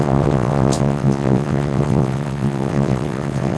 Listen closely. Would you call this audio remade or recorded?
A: remade